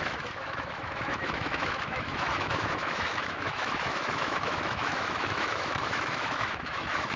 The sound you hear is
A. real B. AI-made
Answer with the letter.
B